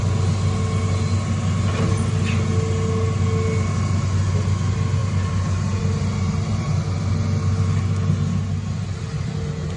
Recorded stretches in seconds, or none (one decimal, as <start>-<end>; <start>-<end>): 0.0-9.8